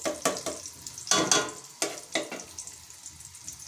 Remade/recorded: recorded